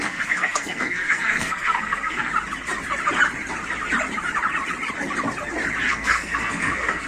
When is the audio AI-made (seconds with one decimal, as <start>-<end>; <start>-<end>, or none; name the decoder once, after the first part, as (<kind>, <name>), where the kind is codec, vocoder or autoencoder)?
0.0-2.3 (codec, SNAC); 5.9-7.1